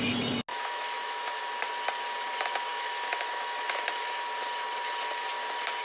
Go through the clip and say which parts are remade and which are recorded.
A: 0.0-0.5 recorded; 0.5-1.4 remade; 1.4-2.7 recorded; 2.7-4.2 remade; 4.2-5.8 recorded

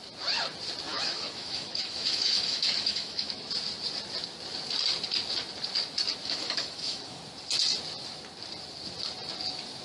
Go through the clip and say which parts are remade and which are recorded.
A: 0.0-0.9 recorded; 0.9-3.5 remade; 3.5-6.2 recorded; 6.2-7.2 remade; 7.2-9.8 recorded

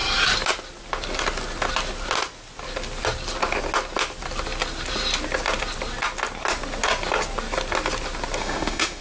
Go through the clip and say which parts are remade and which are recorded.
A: 0.0-8.4 recorded; 8.4-9.0 remade

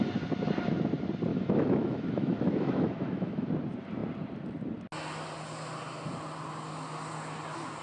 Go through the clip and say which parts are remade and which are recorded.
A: 0.0-1.3 recorded; 1.3-3.5 remade; 3.5-7.8 recorded

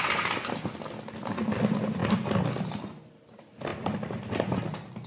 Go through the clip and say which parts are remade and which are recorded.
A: 0.0-5.1 recorded

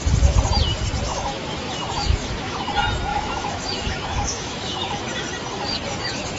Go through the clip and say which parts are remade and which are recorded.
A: 0.0-1.1 recorded; 1.1-2.6 remade; 2.6-3.1 recorded; 3.1-5.0 remade; 5.0-6.4 recorded

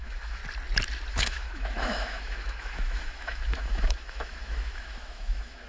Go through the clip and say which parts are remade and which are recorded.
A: 0.0-0.4 remade; 0.4-1.1 recorded; 1.1-5.7 remade

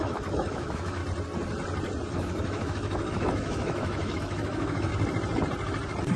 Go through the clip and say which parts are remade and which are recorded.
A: 0.0-1.0 remade; 1.0-2.1 recorded; 2.1-4.9 remade; 4.9-6.2 recorded